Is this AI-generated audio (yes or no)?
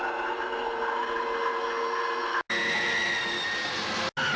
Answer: no